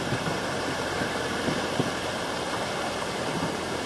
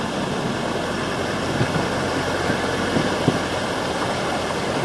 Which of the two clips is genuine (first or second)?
second